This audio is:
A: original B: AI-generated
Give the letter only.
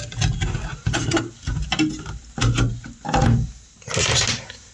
A